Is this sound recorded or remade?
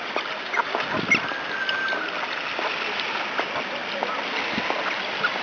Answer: recorded